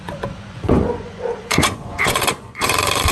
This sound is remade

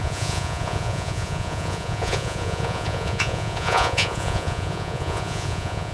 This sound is remade